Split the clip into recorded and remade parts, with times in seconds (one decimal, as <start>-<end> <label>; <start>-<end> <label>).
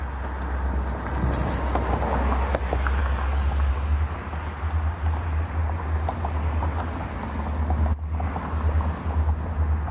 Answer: 0.0-3.0 recorded; 3.0-3.7 remade; 3.7-9.9 recorded